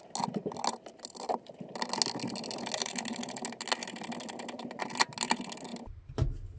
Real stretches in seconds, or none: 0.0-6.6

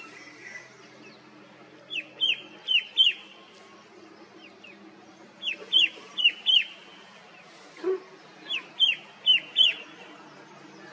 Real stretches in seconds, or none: 0.0-10.9

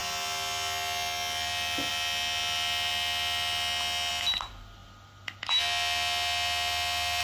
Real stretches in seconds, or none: 0.0-7.2